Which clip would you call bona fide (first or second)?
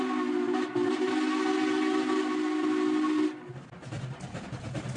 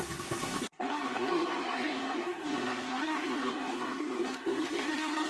first